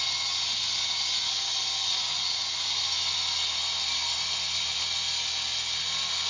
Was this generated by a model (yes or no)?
no